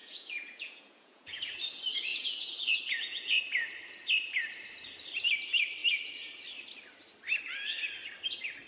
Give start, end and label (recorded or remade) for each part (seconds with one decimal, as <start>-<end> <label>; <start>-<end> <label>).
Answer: 0.0-1.4 remade; 1.4-2.1 recorded; 2.1-3.4 remade; 3.4-8.7 recorded